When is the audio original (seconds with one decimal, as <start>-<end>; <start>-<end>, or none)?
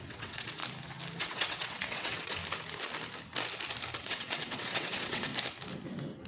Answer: 0.6-1.2; 2.4-4.0; 5.3-6.3